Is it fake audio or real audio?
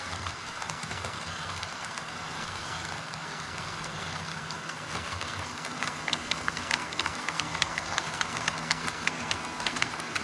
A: fake